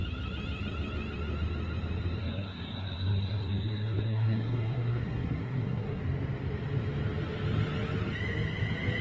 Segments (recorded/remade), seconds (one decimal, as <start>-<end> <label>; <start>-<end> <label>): 0.0-2.2 recorded; 2.2-6.0 remade; 6.0-9.0 recorded